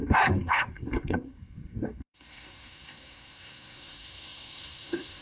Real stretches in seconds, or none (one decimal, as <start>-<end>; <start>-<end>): none